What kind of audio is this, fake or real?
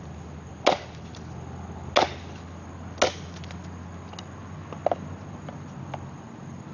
real